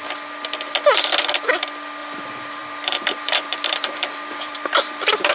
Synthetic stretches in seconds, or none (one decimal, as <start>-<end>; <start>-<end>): 2.0-5.3